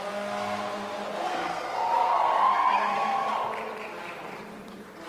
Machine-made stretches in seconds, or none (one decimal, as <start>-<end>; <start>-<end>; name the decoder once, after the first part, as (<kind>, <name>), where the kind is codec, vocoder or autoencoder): 1.3-3.3 (codec, SNAC)